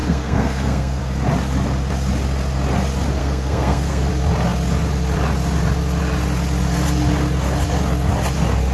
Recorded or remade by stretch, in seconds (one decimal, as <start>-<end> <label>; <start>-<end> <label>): 0.0-1.0 remade; 1.0-3.2 recorded; 3.2-4.1 remade; 4.1-8.7 recorded